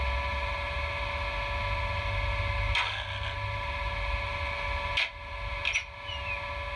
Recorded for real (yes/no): yes